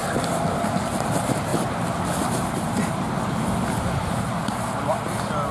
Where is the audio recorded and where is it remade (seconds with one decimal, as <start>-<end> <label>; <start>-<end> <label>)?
0.0-5.5 recorded